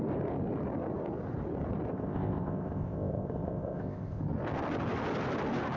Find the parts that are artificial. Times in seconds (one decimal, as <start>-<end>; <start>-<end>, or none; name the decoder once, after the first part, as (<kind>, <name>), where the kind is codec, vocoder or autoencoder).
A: 1.9-4.2 (codec, ZipCodec)